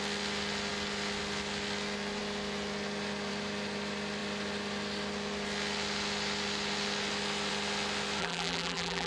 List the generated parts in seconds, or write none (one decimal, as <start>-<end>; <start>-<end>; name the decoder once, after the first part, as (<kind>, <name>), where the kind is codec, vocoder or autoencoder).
8.2-9.1 (vocoder, BigVGAN v2)